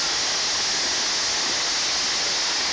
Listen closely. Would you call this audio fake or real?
real